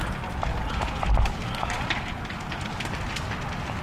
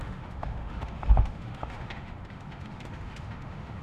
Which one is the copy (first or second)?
second